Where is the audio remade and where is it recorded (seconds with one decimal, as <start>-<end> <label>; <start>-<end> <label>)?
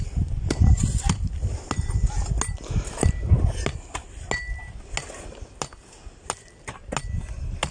0.0-7.7 recorded